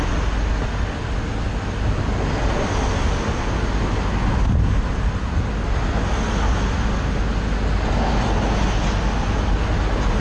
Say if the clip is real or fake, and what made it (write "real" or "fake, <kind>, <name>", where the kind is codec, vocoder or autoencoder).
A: real